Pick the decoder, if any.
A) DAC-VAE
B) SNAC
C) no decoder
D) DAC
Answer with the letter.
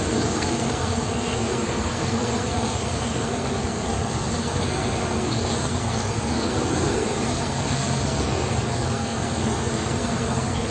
B